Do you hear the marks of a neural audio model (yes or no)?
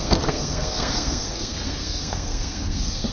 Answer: yes